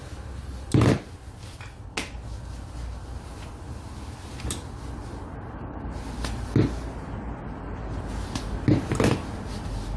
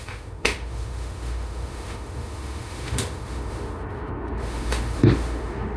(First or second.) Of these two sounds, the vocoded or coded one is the second